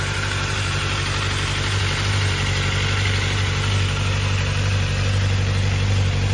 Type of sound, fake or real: real